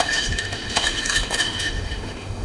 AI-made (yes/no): yes